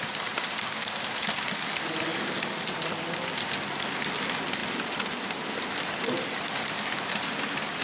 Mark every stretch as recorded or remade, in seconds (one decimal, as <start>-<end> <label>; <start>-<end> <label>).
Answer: 0.0-7.8 recorded